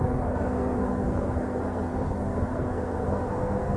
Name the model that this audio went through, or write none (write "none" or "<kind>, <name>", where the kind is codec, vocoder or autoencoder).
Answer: codec, SNAC